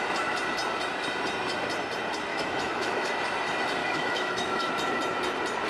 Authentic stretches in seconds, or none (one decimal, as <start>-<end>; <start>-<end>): 0.0-2.3; 3.1-3.8; 4.7-5.7

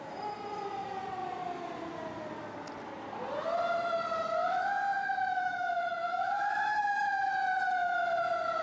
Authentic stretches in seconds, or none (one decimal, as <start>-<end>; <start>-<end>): 0.0-4.4; 7.3-8.6

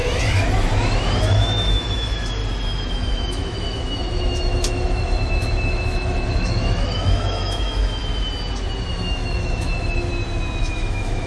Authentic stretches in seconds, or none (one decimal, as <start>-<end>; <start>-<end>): 0.0-1.2; 2.4-2.9; 8.0-8.9; 10.1-10.6

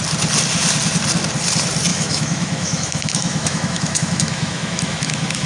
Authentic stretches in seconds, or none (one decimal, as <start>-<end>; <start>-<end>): 0.0-1.9

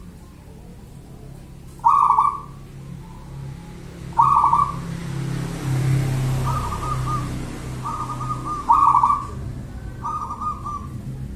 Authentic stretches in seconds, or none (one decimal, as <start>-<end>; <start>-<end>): 0.0-11.4